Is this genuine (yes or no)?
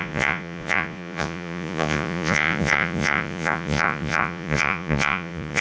no